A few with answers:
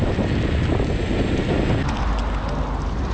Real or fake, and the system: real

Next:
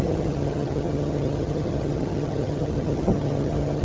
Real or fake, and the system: fake, vocoder, HiFi-GAN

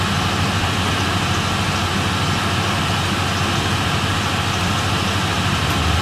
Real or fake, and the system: real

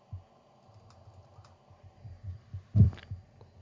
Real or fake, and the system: real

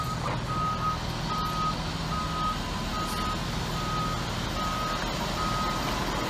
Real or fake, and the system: real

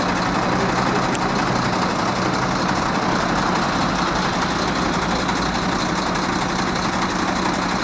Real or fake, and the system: real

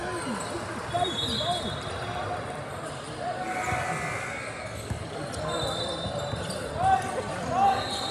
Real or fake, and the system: real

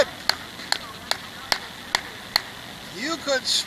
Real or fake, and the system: real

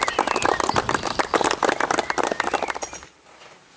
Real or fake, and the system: real